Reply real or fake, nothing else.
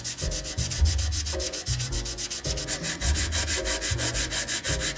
fake